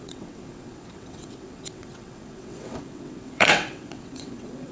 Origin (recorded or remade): remade